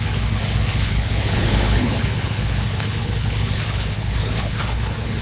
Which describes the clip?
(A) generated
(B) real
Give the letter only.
A